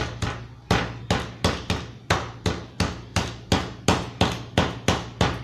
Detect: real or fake real